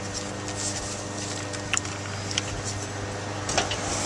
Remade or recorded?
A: recorded